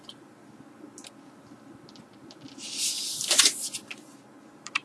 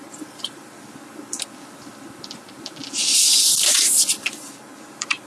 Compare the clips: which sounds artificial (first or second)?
second